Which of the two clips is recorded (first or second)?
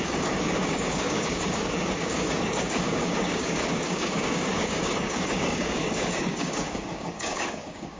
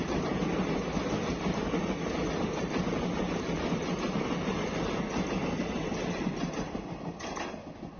second